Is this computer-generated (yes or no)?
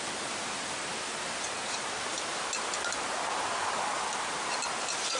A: no